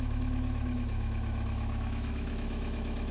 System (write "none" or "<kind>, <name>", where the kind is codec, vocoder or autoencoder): autoencoder, DAC-VAE